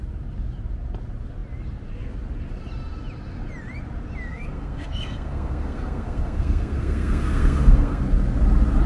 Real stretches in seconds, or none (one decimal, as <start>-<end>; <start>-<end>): 0.0-4.3; 8.0-8.9